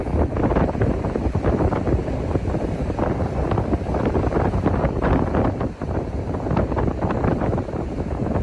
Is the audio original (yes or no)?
no